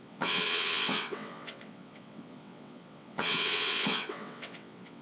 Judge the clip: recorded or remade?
remade